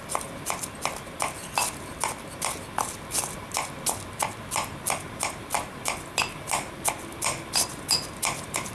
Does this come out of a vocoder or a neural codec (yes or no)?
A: no